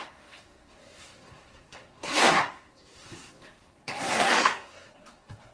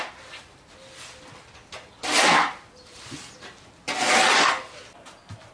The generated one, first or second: first